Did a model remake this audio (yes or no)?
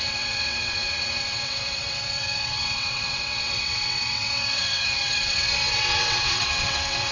yes